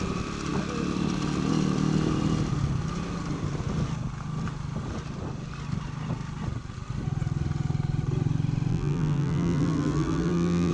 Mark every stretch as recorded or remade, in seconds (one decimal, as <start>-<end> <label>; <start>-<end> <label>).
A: 0.0-8.7 recorded; 8.7-10.7 remade